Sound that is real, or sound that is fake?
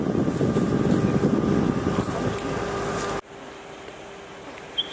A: real